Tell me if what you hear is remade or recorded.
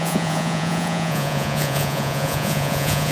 remade